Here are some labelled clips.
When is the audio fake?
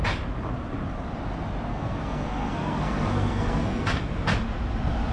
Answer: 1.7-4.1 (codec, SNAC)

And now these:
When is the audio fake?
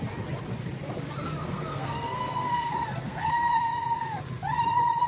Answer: 1.4-4.2 (codec, SNAC)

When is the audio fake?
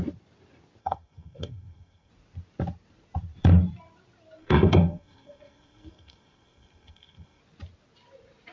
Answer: 0.8-2.1 (codec, SNAC); 4.4-7.4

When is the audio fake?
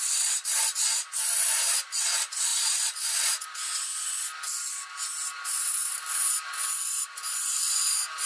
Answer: none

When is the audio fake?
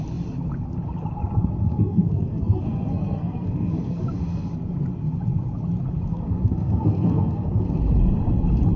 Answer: 1.7-4.2 (codec, SNAC); 6.1-7.6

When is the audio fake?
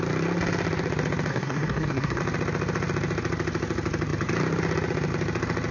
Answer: 1.3-2.2 (codec, SNAC)